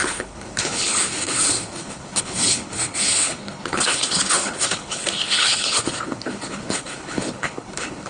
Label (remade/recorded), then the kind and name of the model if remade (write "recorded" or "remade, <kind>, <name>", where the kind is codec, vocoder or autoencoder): remade, codec, HILCodec